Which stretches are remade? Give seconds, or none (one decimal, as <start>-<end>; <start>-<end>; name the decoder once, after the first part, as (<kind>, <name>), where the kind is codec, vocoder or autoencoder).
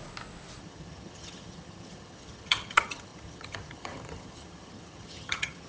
0.6-5.7 (vocoder, HiFi-GAN)